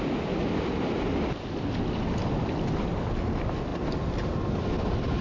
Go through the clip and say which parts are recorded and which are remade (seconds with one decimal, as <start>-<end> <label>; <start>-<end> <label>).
0.0-5.2 recorded